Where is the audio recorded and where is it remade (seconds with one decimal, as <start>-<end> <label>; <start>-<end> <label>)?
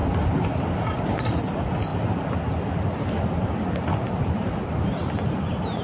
0.0-5.8 recorded